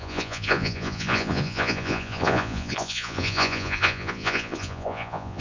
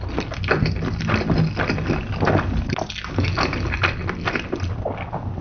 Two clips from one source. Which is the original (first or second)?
second